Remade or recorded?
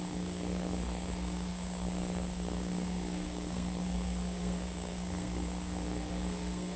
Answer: remade